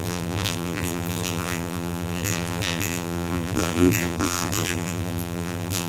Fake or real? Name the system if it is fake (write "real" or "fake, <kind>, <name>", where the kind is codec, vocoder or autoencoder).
fake, vocoder, BigVGAN v2